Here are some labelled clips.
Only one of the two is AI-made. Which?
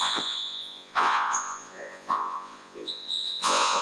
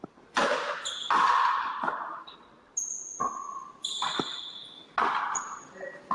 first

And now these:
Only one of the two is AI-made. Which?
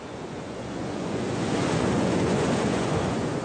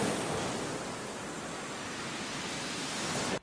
first